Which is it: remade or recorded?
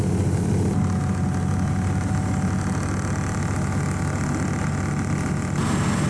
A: recorded